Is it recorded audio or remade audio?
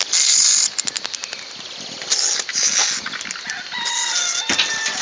recorded